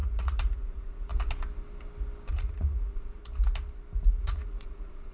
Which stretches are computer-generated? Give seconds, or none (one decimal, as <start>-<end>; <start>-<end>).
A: 0.0-1.1; 2.3-3.2; 4.2-5.1

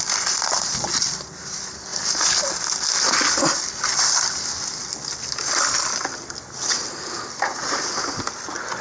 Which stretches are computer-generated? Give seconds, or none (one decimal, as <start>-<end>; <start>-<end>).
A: none

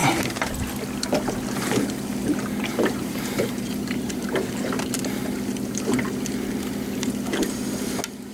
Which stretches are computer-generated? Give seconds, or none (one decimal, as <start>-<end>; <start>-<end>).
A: 0.0-0.7; 2.7-5.1

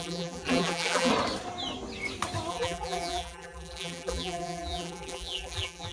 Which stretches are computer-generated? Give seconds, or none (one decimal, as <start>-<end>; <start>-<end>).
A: 0.0-1.1; 2.5-5.9

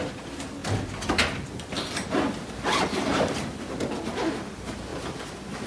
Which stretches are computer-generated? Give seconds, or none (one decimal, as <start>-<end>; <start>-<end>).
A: none